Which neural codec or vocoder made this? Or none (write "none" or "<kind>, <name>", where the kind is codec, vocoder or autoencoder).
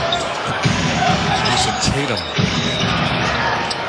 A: codec, DAC